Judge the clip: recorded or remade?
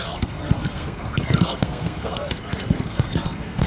remade